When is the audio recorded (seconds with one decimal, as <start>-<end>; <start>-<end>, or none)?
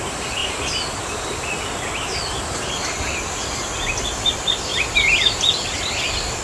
0.0-4.7; 5.4-6.4